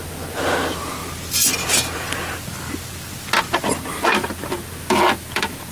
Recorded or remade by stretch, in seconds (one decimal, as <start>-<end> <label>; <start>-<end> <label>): 0.0-5.7 recorded